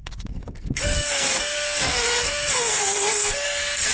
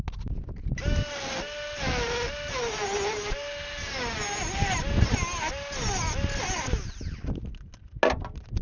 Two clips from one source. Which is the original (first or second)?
second